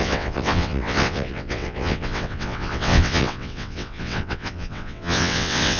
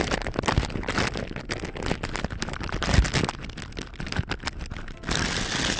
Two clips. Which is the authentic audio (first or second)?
second